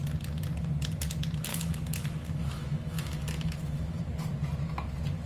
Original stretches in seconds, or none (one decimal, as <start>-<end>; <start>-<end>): 0.0-1.5; 4.0-5.3